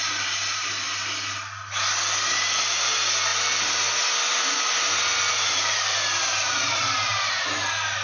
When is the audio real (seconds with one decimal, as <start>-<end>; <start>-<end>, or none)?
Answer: 0.0-8.0